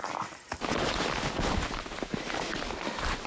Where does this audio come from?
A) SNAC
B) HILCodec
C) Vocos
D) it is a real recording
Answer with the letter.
D